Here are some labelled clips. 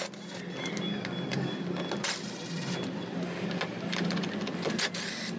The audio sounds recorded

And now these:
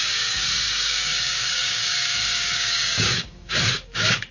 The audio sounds remade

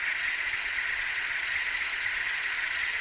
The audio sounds remade